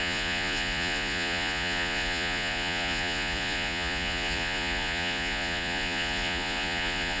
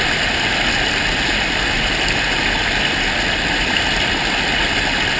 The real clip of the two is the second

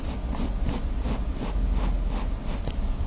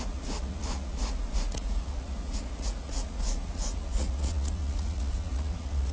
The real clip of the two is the first